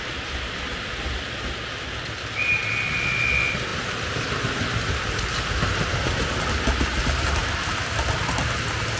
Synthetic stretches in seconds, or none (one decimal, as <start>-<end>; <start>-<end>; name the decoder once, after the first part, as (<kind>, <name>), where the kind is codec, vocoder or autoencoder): none